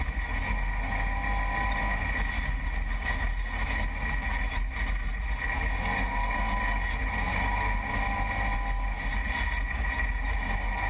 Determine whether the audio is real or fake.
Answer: real